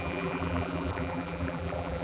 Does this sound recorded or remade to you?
remade